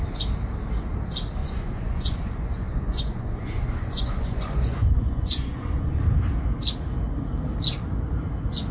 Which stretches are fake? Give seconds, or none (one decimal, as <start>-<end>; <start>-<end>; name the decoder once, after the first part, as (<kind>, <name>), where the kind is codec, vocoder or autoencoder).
1.4-6.0 (vocoder, Vocos)